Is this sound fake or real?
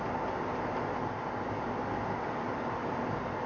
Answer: real